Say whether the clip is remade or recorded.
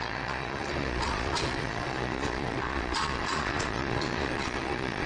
remade